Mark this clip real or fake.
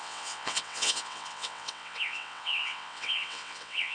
fake